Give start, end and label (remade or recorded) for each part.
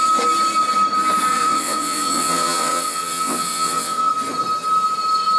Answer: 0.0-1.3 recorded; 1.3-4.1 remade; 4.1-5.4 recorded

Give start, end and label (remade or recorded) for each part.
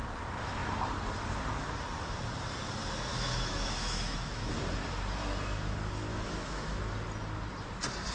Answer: 0.0-3.1 recorded; 3.1-4.5 remade; 4.5-6.1 recorded; 6.1-6.8 remade; 6.8-8.1 recorded